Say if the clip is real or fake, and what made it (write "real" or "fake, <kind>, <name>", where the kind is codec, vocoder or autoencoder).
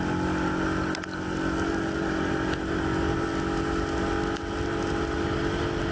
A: real